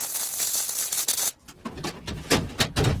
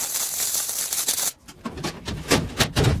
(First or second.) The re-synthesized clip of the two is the second